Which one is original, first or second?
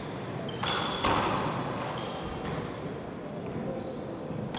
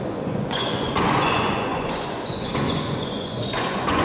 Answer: first